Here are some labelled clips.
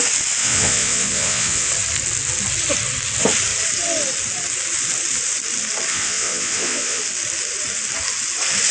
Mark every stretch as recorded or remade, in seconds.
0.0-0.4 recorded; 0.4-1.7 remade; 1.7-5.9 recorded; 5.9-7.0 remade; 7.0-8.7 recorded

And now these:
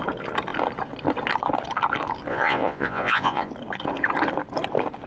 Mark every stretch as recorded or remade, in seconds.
0.0-2.3 recorded; 2.3-3.5 remade; 3.5-5.1 recorded

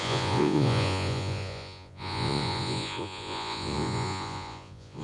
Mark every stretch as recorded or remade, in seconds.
0.0-5.0 remade

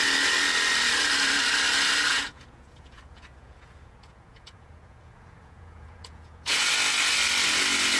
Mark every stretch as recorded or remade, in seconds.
0.0-2.1 recorded; 2.1-6.7 remade; 6.7-8.0 recorded

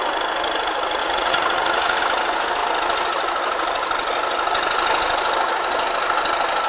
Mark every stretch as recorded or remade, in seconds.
0.0-1.0 recorded; 1.0-2.0 remade; 2.0-6.7 recorded

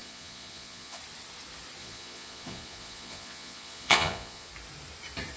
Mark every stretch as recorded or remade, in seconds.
0.0-1.0 remade; 1.0-1.8 recorded; 1.8-4.5 remade; 4.5-5.4 recorded

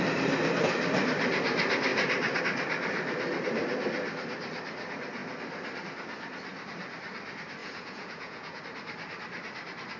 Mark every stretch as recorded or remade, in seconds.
0.0-7.6 recorded; 7.6-8.6 remade; 8.6-10.0 recorded